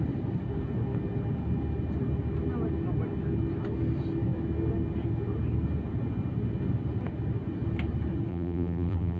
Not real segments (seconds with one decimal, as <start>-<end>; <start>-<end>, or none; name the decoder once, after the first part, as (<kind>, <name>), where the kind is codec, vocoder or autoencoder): 8.3-9.2 (vocoder, BigVGAN v2)

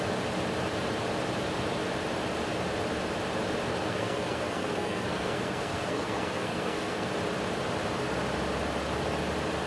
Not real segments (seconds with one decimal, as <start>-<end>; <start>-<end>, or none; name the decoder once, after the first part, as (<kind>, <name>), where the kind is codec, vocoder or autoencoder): 3.7-7.1 (codec, SNAC)

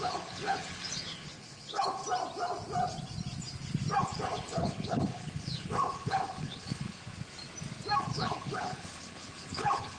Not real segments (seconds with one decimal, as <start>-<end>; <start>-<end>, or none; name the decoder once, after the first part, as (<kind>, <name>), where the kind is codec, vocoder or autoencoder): 0.0-2.0 (codec, HILCodec); 4.0-7.0; 8.0-10.0